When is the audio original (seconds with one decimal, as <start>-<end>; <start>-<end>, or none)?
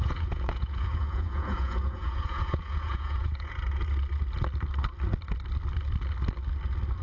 3.5-7.0